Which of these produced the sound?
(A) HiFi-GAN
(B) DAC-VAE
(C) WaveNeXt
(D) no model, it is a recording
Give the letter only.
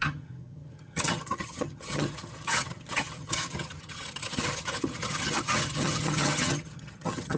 A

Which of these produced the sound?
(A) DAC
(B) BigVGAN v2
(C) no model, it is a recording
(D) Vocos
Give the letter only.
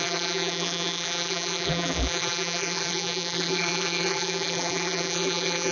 B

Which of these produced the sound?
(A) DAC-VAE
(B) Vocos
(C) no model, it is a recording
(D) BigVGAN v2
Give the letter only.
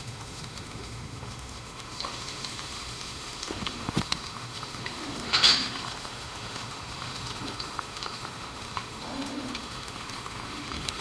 A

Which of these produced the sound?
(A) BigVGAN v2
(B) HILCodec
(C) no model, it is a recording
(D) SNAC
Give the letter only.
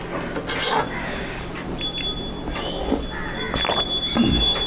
C